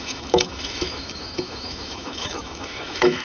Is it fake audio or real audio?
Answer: fake